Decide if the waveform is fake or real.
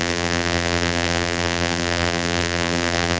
fake